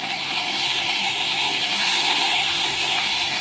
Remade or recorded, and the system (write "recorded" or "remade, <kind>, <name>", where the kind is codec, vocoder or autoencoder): remade, codec, SNAC